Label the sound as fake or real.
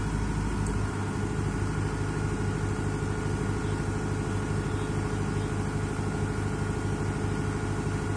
real